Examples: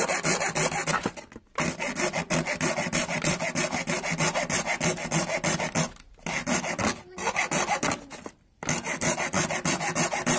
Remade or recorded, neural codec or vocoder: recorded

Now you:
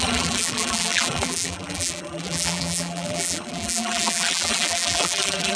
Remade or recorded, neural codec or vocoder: remade, vocoder, BigVGAN v2